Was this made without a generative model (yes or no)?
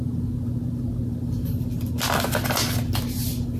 yes